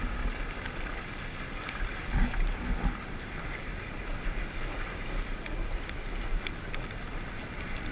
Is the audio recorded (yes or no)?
yes